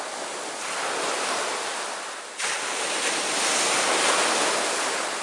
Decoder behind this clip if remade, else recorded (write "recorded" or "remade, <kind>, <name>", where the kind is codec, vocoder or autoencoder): recorded